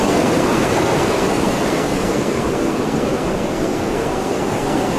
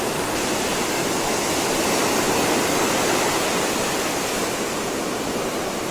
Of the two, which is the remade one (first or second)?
first